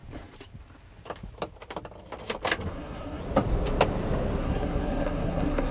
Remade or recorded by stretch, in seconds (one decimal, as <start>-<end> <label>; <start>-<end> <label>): 0.0-2.7 recorded; 2.7-3.2 remade; 3.2-4.4 recorded; 4.4-5.7 remade